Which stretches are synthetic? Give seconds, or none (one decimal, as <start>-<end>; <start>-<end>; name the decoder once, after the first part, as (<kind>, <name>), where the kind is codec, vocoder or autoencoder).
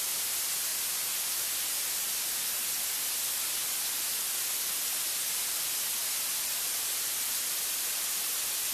none